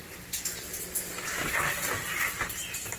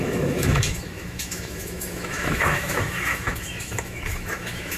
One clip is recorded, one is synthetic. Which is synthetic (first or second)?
second